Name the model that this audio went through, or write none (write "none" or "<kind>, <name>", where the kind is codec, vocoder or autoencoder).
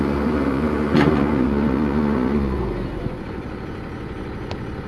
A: vocoder, Vocos